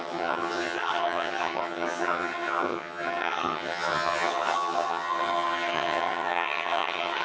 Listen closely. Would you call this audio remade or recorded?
remade